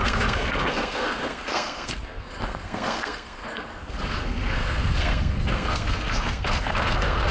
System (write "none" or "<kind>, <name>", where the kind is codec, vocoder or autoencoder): codec, SNAC